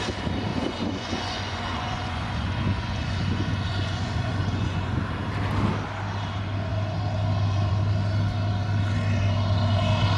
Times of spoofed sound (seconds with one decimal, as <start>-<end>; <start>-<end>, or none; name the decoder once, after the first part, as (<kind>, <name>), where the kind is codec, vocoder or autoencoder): 0.5-5.0 (vocoder, Vocos)